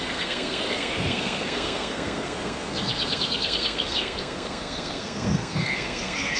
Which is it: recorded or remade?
remade